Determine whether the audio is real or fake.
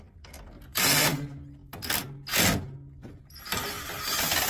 real